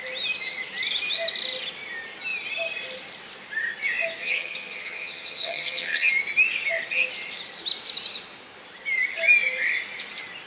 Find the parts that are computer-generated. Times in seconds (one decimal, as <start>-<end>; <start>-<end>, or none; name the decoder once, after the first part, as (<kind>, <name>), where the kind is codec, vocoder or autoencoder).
4.2-6.1 (vocoder, HiFi-GAN)